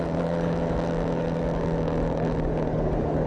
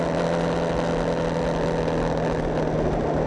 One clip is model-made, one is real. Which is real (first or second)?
second